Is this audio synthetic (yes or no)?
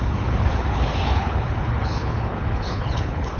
yes